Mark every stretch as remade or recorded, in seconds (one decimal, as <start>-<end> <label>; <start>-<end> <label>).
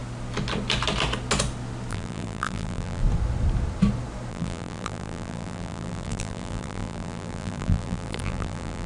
0.0-1.9 recorded; 1.9-3.0 remade; 3.0-4.3 recorded; 4.3-8.9 remade